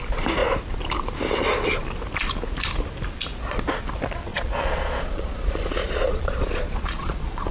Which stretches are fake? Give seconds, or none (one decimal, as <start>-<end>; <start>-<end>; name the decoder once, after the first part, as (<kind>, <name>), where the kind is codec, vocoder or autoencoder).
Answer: 4.3-7.5 (vocoder, Vocos)